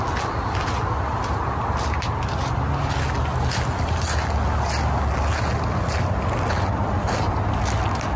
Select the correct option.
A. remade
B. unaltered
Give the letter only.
B